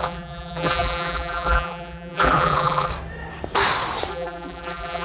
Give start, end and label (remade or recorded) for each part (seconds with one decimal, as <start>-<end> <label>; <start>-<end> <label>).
0.0-2.9 remade; 2.9-4.1 recorded; 4.1-5.0 remade